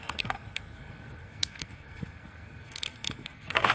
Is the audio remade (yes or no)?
yes